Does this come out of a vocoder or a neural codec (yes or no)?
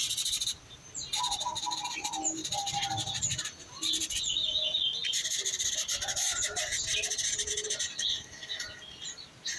no